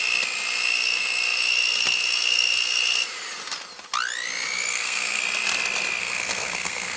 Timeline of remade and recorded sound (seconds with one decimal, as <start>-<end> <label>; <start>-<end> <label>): 0.0-4.7 recorded; 4.7-5.2 remade; 5.2-6.0 recorded; 6.0-7.0 remade